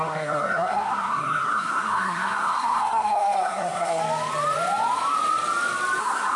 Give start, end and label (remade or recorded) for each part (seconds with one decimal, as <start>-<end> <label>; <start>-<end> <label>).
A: 0.0-4.0 remade; 4.0-6.0 recorded; 6.0-6.4 remade